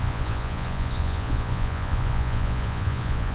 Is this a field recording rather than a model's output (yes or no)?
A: no